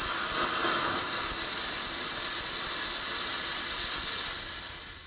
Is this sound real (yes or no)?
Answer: yes